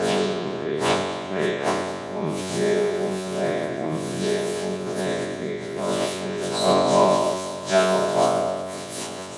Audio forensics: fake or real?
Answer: fake